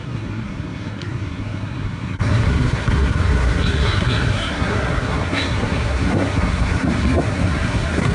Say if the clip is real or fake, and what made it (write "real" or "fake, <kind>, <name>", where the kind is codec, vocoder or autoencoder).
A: fake, codec, SNAC